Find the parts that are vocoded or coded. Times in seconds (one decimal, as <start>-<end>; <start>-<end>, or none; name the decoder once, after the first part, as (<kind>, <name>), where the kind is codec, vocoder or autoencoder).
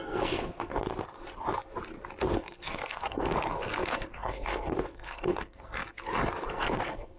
0.0-0.7 (codec, SNAC); 2.3-5.8; 6.5-7.2